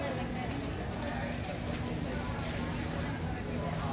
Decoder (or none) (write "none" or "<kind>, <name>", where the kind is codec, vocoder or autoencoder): none